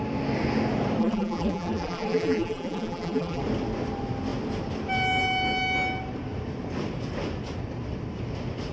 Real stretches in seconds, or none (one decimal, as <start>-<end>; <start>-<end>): 0.0-1.0; 3.4-8.7

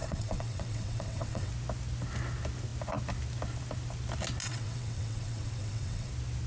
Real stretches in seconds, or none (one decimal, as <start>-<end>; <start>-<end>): 1.5-4.4; 6.1-6.5

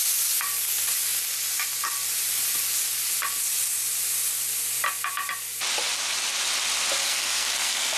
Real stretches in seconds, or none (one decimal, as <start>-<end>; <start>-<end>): 0.0-7.0

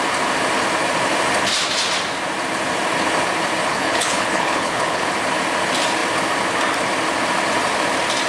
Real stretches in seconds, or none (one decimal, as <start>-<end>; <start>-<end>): 0.0-3.7; 5.1-8.3